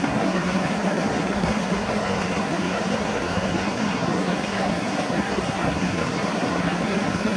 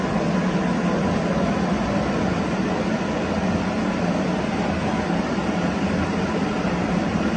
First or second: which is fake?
first